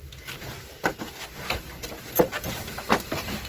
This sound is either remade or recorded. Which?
remade